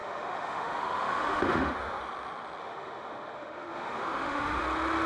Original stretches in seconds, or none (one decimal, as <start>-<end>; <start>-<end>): 2.0-2.6; 4.6-5.1